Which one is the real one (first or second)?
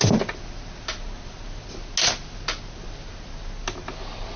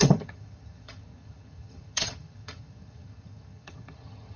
first